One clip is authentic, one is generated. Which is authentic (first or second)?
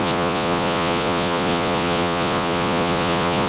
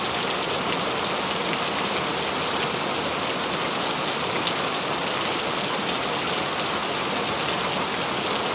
second